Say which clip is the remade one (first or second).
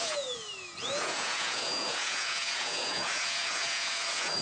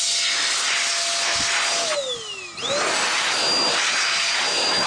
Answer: first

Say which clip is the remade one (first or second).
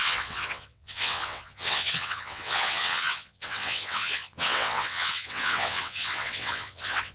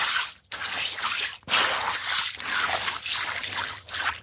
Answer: first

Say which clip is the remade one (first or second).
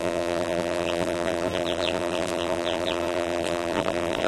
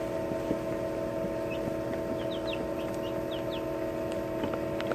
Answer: first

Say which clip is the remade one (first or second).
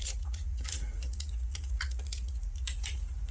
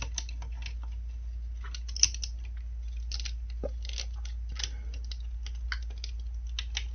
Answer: first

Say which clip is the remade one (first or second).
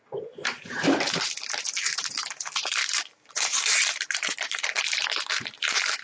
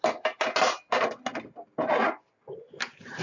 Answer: first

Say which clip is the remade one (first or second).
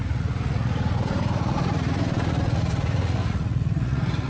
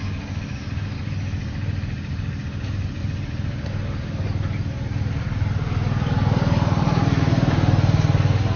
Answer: first